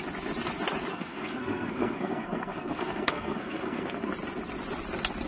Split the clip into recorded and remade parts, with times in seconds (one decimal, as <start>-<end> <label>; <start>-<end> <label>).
0.0-0.9 recorded; 0.9-4.1 remade; 4.1-5.3 recorded

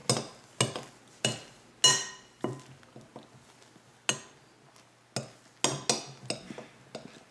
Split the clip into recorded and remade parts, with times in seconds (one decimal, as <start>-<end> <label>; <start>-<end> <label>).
0.0-7.3 recorded

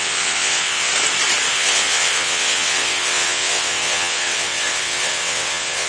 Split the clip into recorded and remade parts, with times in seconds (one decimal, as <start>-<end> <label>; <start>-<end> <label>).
0.0-0.9 remade; 0.9-1.5 recorded; 1.5-5.9 remade

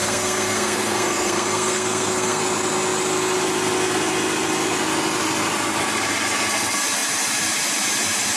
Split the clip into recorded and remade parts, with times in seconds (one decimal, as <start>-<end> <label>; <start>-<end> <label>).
0.0-2.4 remade; 2.4-8.4 recorded